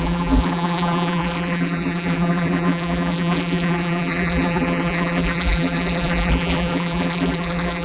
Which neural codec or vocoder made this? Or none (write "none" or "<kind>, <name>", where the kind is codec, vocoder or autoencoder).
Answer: vocoder, BigVGAN v2